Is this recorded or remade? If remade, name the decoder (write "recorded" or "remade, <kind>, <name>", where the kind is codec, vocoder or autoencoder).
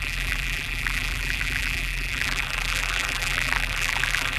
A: remade, vocoder, BigVGAN v2